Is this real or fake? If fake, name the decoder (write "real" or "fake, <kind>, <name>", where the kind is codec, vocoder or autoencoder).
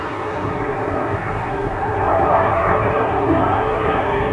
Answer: fake, codec, SNAC